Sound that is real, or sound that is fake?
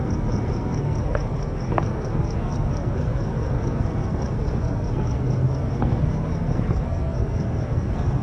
fake